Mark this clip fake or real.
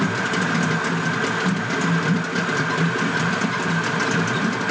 real